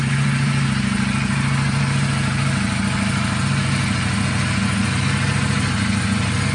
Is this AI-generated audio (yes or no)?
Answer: no